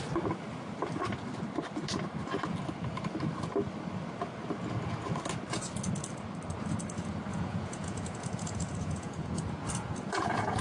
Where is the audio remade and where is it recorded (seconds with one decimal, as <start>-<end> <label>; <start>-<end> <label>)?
0.0-7.3 recorded; 7.3-10.6 remade